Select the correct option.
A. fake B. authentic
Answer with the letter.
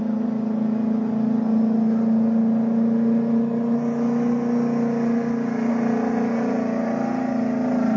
B